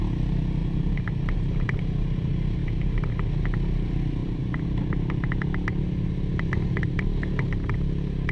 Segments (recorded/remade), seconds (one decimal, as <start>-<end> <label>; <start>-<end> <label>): 0.0-0.6 recorded; 0.6-1.8 remade; 1.8-2.6 recorded; 2.6-3.1 remade; 3.1-4.2 recorded; 4.2-4.8 remade; 4.8-8.3 recorded